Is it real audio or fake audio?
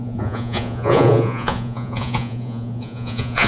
fake